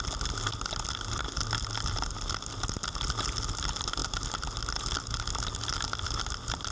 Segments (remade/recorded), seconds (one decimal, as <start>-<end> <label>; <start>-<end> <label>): 0.0-6.7 recorded